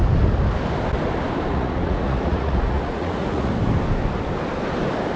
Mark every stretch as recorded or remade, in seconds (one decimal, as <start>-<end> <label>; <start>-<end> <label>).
0.0-1.5 recorded; 1.5-3.5 remade; 3.5-5.2 recorded